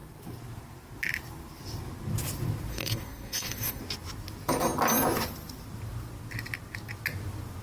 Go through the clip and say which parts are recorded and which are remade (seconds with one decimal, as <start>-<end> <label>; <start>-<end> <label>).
0.0-2.7 recorded; 2.7-3.8 remade; 3.8-7.6 recorded